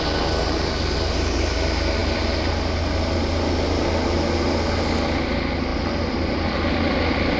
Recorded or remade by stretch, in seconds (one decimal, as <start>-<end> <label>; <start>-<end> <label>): 0.0-2.0 recorded; 2.0-2.5 remade; 2.5-5.7 recorded; 5.7-7.4 remade